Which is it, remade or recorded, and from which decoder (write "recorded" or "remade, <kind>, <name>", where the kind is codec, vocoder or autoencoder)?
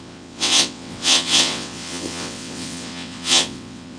remade, vocoder, WaveNeXt